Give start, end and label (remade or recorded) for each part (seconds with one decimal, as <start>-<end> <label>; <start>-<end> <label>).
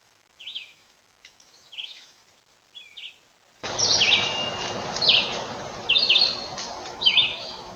0.0-2.2 remade; 2.2-6.9 recorded; 6.9-7.8 remade